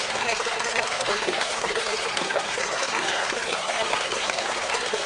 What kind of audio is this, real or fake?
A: fake